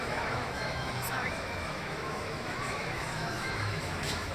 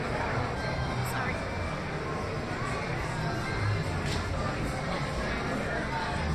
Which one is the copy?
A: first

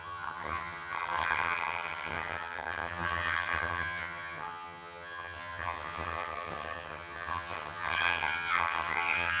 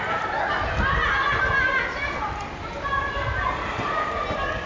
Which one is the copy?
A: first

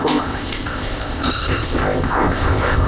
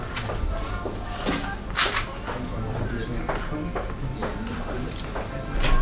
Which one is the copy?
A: first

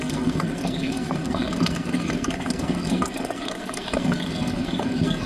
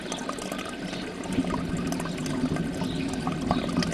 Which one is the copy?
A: first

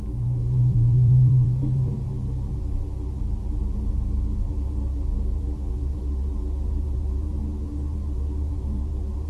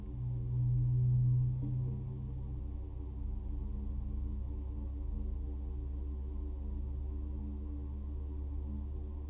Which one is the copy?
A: first